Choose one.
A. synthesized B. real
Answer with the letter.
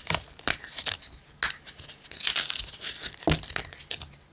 B